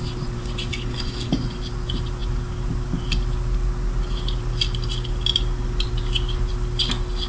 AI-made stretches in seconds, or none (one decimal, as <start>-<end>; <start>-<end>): 0.7-1.3